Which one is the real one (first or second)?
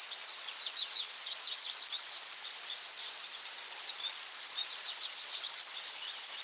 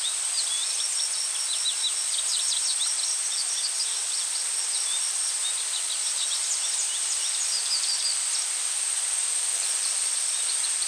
second